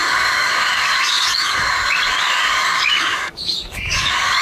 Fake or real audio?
fake